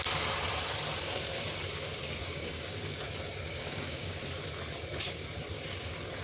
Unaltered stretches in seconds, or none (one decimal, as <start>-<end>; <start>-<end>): 0.0-2.2; 3.0-3.5; 4.2-6.2